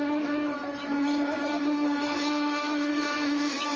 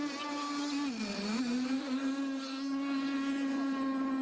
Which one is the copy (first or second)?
first